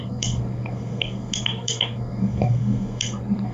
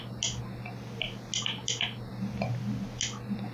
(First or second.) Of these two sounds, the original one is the second